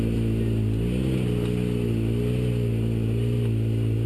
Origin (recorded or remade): recorded